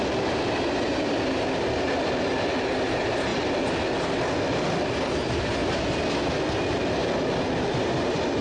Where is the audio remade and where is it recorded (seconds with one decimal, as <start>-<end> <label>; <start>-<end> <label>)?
0.0-8.4 recorded